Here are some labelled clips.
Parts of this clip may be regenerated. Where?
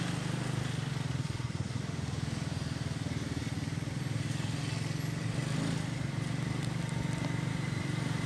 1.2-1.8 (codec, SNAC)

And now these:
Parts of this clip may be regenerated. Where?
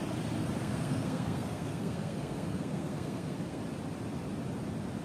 0.6-3.6 (codec, SNAC)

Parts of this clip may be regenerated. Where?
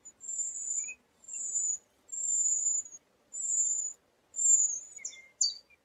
none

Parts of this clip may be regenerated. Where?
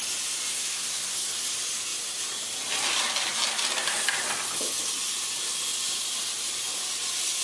0.5-1.3 (codec, SNAC)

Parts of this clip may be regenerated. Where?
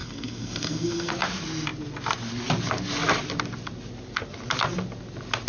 0.0-1.1 (codec, SNAC)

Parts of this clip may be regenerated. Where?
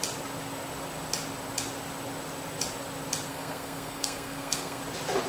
3.3-4.8 (codec, SNAC)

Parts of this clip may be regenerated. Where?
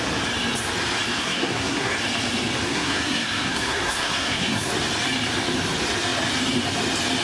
1.2-1.9 (codec, SNAC); 2.7-4.7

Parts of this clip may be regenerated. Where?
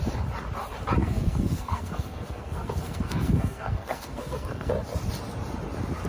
1.0-4.7 (codec, SNAC)